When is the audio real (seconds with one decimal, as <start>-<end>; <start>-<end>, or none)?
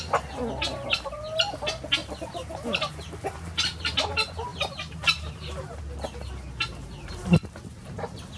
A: 0.0-2.0; 3.8-4.5; 5.8-8.4